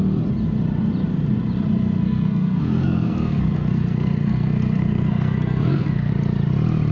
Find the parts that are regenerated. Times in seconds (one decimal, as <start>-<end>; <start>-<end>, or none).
2.0-6.1